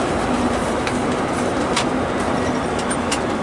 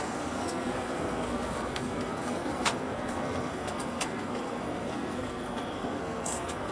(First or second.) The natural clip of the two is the first